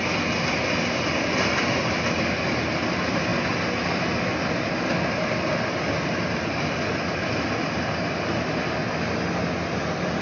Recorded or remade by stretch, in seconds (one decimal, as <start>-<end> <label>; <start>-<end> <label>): 0.0-10.2 recorded